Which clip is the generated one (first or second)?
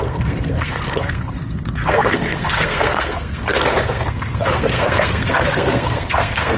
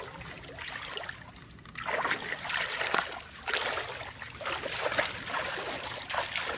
first